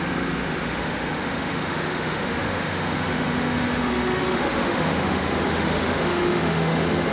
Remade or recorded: remade